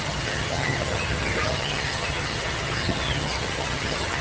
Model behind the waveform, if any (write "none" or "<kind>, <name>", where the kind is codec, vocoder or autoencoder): vocoder, HiFi-GAN